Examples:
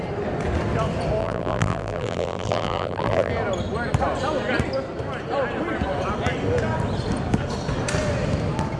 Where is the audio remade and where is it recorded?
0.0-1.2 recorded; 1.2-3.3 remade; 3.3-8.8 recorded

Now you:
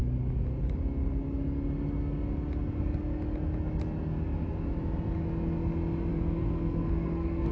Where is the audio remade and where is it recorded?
0.0-6.1 recorded; 6.1-7.5 remade

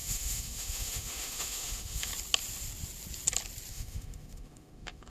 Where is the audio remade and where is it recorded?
0.0-2.1 remade; 2.1-3.7 recorded; 3.7-5.1 remade

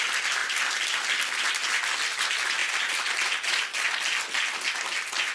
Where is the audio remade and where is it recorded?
0.0-5.3 recorded

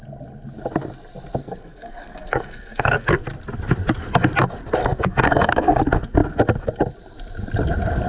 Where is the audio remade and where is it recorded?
0.0-1.4 recorded; 1.4-3.2 remade; 3.2-4.8 recorded; 4.8-5.8 remade; 5.8-8.1 recorded

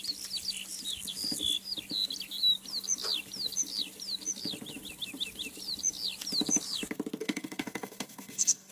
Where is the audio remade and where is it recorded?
0.0-7.2 recorded; 7.2-8.7 remade